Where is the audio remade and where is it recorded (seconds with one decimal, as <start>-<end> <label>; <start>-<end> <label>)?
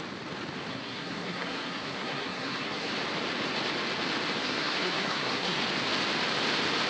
0.0-0.7 recorded; 0.7-2.9 remade; 2.9-4.4 recorded; 4.4-5.6 remade; 5.6-6.9 recorded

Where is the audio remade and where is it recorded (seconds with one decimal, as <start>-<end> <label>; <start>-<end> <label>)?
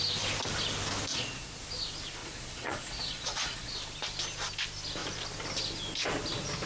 0.0-1.1 recorded; 1.1-1.6 remade; 1.6-2.2 recorded; 2.2-3.7 remade; 3.7-6.7 recorded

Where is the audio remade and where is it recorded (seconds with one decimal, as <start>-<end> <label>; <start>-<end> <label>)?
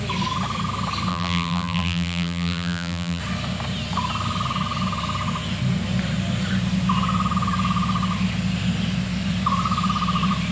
0.0-1.1 recorded; 1.1-3.2 remade; 3.2-10.5 recorded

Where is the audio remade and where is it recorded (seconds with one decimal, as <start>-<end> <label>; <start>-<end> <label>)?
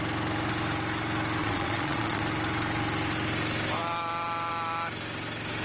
0.0-1.4 recorded; 1.4-2.2 remade; 2.2-5.6 recorded